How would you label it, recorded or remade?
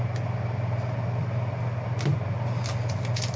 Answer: recorded